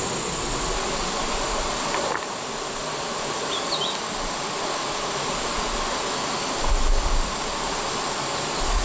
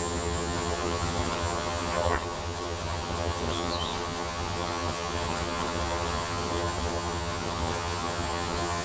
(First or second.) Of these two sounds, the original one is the first